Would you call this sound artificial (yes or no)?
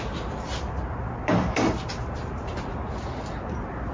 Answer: no